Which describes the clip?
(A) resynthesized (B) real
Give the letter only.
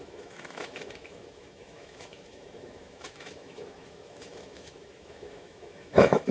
A